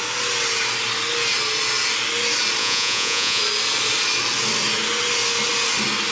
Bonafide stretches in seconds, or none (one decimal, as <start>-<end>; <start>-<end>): 0.0-2.6; 3.4-6.1